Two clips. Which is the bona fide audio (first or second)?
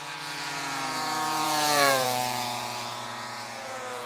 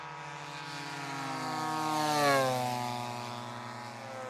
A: second